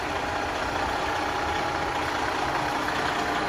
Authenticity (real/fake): real